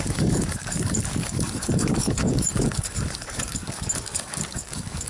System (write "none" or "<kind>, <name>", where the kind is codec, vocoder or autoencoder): codec, DAC